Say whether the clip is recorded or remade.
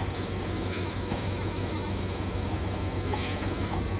remade